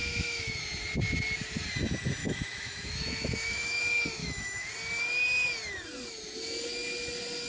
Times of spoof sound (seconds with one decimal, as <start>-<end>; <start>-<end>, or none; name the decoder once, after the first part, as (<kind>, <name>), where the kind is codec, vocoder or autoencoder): 0.0-0.6 (autoencoder, DAC-VAE); 2.2-3.8; 4.2-4.7